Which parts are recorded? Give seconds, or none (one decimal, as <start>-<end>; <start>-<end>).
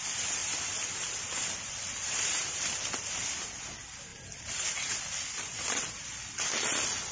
0.0-0.4; 3.1-4.1; 4.7-7.1